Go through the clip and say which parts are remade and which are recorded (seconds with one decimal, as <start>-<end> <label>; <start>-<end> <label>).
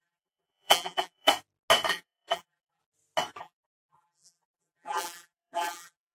0.0-1.3 remade; 1.3-1.9 recorded; 1.9-2.8 remade; 2.8-3.4 recorded; 3.4-6.1 remade